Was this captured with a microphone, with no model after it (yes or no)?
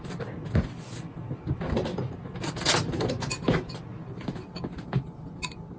yes